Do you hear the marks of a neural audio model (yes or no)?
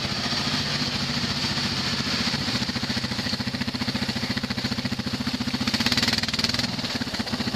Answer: yes